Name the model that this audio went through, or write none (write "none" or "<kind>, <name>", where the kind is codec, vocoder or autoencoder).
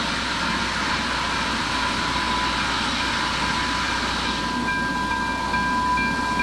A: none